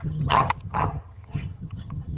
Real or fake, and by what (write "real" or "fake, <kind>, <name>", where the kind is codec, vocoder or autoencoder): fake, vocoder, HiFi-GAN